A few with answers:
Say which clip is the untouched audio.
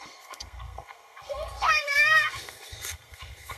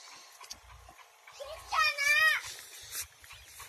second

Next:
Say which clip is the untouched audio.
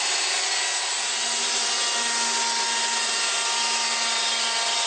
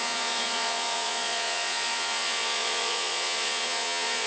first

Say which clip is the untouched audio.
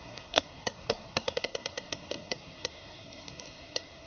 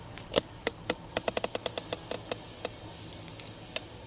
second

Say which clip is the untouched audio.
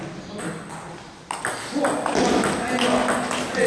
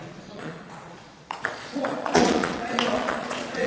first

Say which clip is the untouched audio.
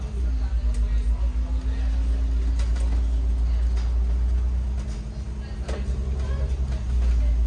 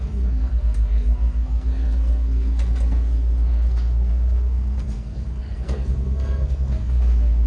first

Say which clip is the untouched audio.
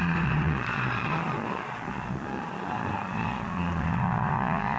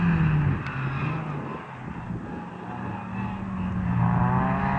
second